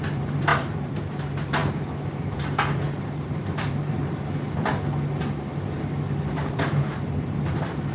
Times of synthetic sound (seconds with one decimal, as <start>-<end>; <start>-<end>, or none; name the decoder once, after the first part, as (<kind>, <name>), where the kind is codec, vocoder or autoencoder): 0.0-4.7 (vocoder, BigVGAN v2); 6.3-7.9